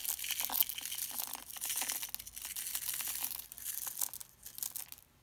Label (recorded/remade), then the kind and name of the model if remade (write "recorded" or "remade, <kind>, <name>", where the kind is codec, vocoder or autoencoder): recorded